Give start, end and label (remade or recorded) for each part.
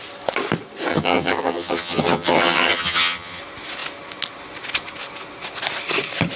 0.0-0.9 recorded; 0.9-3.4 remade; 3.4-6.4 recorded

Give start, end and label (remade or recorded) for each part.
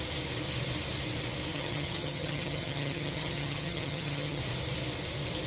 0.0-1.5 recorded; 1.5-4.4 remade; 4.4-5.5 recorded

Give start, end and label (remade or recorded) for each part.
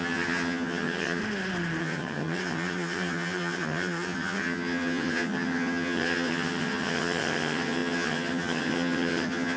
0.0-1.2 remade; 1.2-1.8 recorded; 1.8-9.6 remade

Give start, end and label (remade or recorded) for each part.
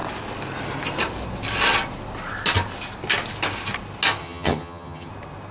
0.0-4.2 recorded; 4.2-5.1 remade; 5.1-5.5 recorded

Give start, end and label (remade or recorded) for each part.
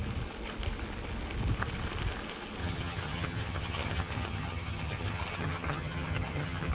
0.0-2.6 recorded; 2.6-6.7 remade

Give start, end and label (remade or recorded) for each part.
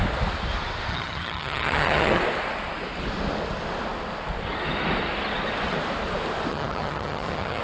0.0-0.9 recorded; 0.9-2.2 remade; 2.2-6.5 recorded; 6.5-7.6 remade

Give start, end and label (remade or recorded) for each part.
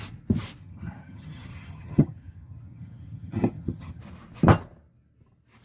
0.0-0.6 recorded; 0.6-4.0 remade; 4.0-5.6 recorded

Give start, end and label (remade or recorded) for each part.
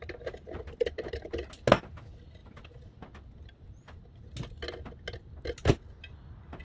0.0-6.6 recorded